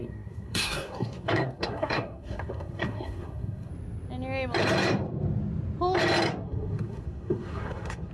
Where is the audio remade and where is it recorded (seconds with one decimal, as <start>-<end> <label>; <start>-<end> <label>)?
0.0-3.7 remade; 3.7-6.3 recorded; 6.3-8.1 remade